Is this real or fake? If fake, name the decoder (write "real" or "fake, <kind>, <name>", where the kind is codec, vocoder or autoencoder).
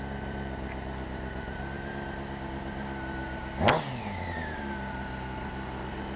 real